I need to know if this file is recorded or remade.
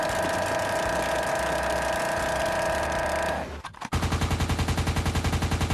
recorded